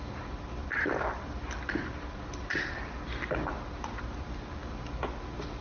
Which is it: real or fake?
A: real